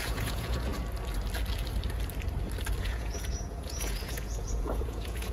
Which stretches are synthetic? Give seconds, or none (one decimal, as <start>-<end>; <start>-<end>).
0.0-0.7; 2.8-5.3